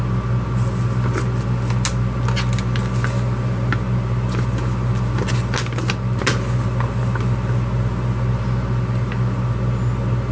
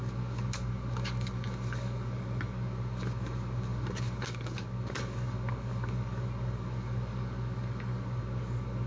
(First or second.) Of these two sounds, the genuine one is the first